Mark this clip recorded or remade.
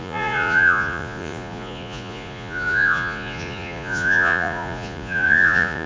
remade